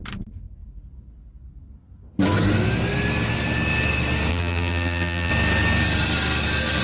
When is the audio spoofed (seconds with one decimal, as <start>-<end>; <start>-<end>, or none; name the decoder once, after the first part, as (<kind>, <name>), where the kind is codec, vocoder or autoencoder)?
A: 4.3-5.3 (vocoder, BigVGAN v2)